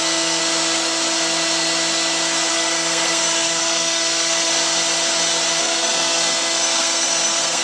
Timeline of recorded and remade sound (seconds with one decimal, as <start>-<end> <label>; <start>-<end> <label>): 0.0-0.4 remade; 0.4-2.5 recorded; 2.5-4.5 remade; 4.5-5.6 recorded; 5.6-7.6 remade

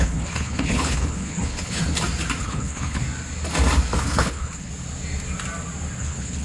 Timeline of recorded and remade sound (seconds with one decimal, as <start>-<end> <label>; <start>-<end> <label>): 0.0-1.8 remade; 1.8-2.4 recorded; 2.4-3.0 remade; 3.0-4.0 recorded; 4.0-4.7 remade; 4.7-6.0 recorded; 6.0-6.4 remade